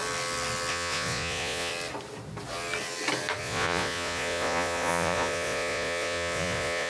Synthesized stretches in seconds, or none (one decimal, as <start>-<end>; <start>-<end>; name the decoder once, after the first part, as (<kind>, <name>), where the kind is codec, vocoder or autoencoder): 0.7-1.7 (vocoder, Vocos); 3.4-6.9